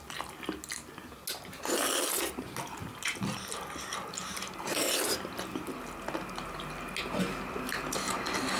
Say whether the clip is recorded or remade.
recorded